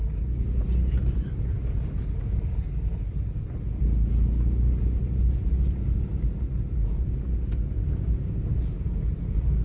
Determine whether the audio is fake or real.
real